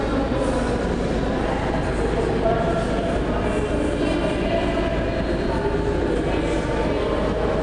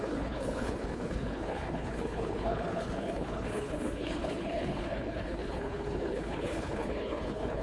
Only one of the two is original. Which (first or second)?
first